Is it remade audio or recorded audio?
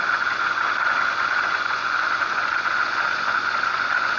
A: remade